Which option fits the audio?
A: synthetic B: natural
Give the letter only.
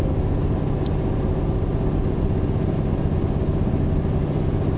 B